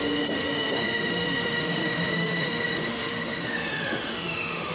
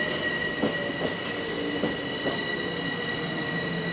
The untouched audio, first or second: second